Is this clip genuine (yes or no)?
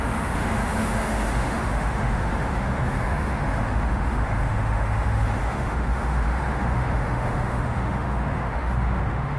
no